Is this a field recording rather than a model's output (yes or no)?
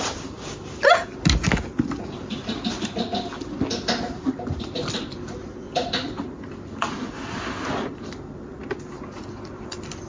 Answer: yes